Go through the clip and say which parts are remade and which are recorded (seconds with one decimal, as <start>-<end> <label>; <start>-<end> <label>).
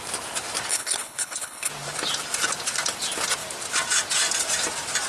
0.0-0.7 recorded; 0.7-1.7 remade; 1.7-5.1 recorded